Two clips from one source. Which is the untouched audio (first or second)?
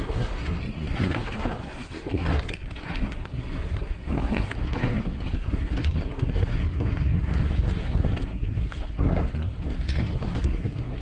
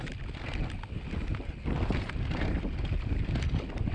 second